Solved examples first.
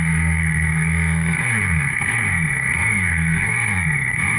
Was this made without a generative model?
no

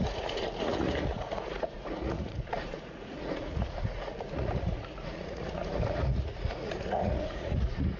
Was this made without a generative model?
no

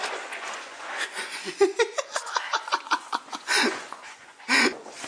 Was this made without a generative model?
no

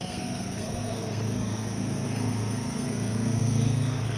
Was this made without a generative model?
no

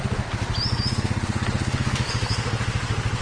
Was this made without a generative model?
yes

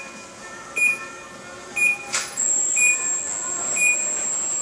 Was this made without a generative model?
yes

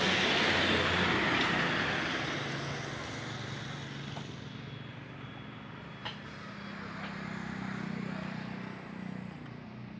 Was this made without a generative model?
yes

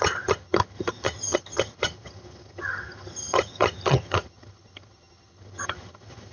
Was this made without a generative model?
no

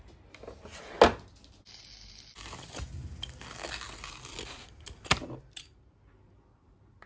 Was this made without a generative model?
yes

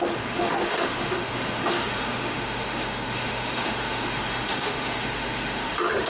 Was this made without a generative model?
no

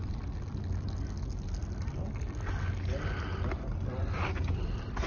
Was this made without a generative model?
yes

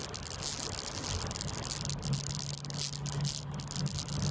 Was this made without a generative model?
yes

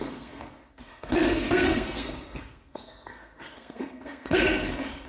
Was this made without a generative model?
no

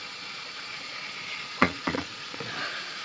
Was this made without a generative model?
no